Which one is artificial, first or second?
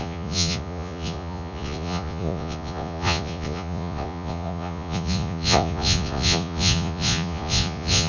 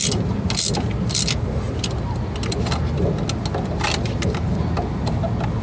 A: first